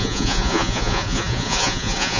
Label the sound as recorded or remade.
remade